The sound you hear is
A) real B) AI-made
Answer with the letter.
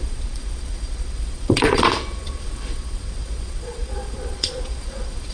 B